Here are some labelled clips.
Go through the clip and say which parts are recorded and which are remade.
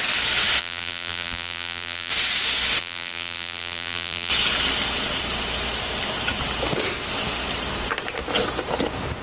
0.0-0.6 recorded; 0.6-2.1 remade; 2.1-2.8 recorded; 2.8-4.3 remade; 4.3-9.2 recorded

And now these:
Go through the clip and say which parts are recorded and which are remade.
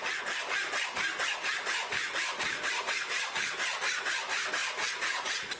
0.0-4.6 recorded; 4.6-5.6 remade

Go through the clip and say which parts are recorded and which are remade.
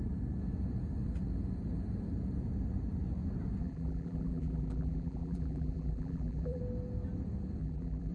0.0-3.6 recorded; 3.6-6.6 remade; 6.6-7.6 recorded; 7.6-8.1 remade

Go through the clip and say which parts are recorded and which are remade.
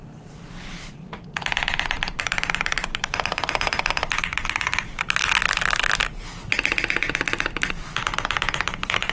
0.0-5.2 remade; 5.2-7.7 recorded; 7.7-9.1 remade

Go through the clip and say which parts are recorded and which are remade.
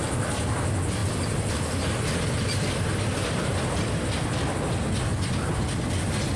0.0-3.2 recorded; 3.2-3.9 remade; 3.9-6.4 recorded